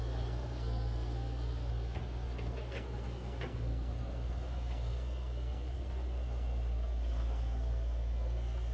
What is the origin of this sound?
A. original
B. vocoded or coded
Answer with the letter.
B